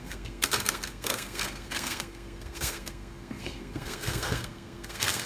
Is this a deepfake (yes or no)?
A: yes